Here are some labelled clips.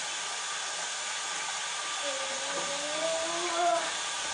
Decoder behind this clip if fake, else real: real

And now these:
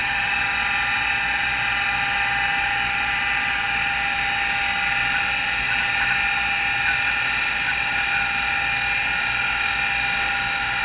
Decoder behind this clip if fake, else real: real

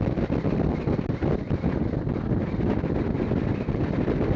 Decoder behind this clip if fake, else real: real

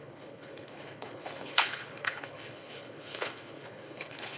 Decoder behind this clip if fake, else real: fake, codec, HILCodec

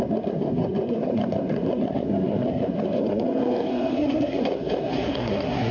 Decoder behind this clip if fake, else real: fake, codec, SNAC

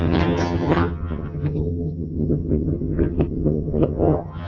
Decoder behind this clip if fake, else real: fake, vocoder, HiFi-GAN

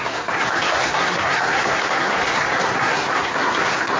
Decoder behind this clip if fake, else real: fake, codec, SNAC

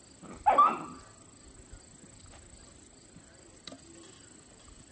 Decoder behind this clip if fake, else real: real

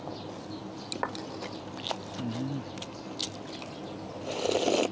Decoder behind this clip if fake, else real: real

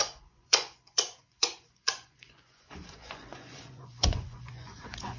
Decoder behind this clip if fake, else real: fake, vocoder, Vocos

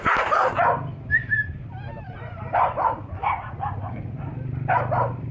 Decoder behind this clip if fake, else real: fake, vocoder, BigVGAN v2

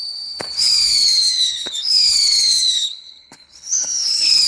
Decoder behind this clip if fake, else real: fake, codec, HILCodec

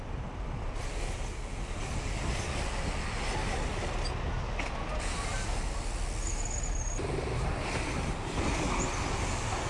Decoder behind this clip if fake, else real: real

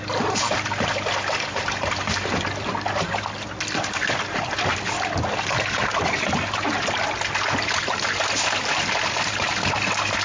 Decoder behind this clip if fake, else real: real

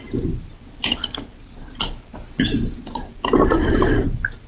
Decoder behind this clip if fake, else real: real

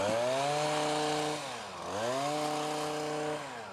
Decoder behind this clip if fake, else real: real